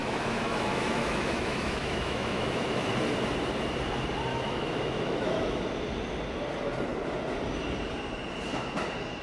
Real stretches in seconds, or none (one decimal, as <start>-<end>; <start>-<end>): 2.9-4.3; 5.6-9.2